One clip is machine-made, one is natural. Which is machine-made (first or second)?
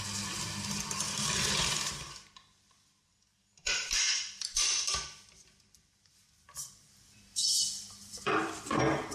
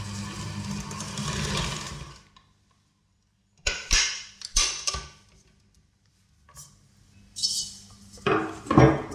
first